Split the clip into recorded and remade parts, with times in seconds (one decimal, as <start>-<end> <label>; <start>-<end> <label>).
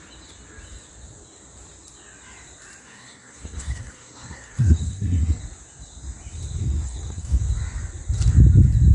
0.0-2.8 recorded; 2.8-5.4 remade; 5.4-6.6 recorded; 6.6-7.4 remade; 7.4-8.9 recorded